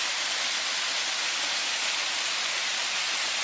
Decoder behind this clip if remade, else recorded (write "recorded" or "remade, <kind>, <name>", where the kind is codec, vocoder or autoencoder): recorded